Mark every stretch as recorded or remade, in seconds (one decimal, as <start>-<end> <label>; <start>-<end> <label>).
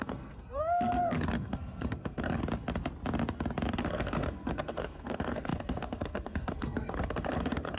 0.0-2.4 remade; 2.4-3.7 recorded; 3.7-7.8 remade